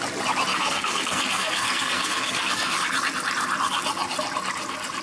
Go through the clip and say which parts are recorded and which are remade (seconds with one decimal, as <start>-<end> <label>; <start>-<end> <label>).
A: 0.0-0.5 recorded; 0.5-2.8 remade; 2.8-5.0 recorded